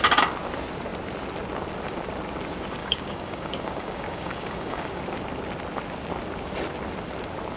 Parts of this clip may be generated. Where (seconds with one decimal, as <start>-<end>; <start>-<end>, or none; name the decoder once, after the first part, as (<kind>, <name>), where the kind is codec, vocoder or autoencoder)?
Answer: 2.8-5.0 (codec, DAC)